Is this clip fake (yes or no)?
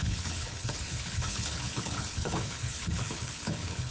yes